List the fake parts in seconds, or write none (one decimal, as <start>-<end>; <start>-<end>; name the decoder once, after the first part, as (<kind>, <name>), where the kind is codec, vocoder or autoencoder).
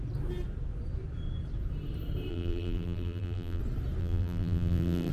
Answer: 2.3-3.6 (vocoder, BigVGAN v2); 4.0-5.1